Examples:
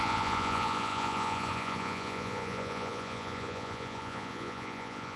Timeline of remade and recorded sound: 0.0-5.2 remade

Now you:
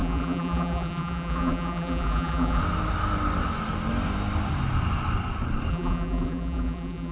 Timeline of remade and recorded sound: 0.0-2.6 remade; 2.6-5.7 recorded; 5.7-7.1 remade

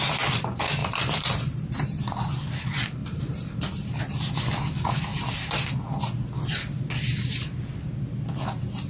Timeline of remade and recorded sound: 0.0-0.8 recorded; 0.8-1.7 remade; 1.7-3.0 recorded; 3.0-4.0 remade; 4.0-5.1 recorded; 5.1-5.7 remade; 5.7-8.9 recorded

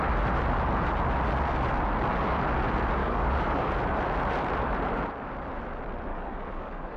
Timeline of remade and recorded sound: 0.0-3.0 recorded; 3.0-3.7 remade; 3.7-6.1 recorded; 6.1-7.0 remade

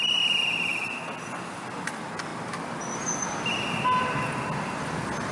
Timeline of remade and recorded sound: 0.0-5.3 recorded